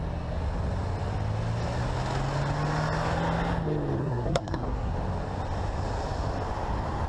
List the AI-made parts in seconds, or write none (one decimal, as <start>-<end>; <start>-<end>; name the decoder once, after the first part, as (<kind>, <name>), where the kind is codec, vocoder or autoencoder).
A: 4.0-4.9 (codec, SNAC)